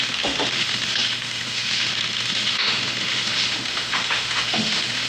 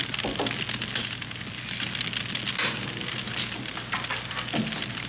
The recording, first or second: second